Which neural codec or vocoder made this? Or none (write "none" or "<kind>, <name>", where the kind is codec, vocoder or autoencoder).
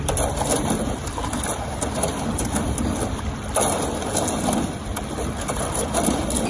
none